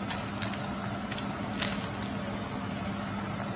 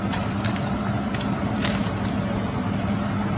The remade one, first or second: second